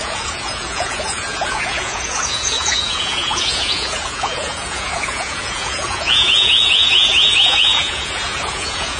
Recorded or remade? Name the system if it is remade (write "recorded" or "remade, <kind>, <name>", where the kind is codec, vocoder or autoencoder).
remade, vocoder, Vocos